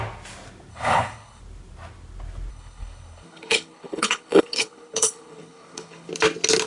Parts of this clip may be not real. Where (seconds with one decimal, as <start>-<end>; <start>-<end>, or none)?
0.7-1.4; 2.5-6.1